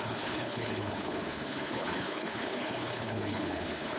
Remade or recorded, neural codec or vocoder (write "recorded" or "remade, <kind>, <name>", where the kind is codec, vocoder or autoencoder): remade, codec, HILCodec